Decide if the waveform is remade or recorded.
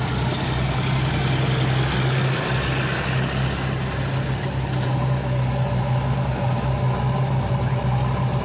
recorded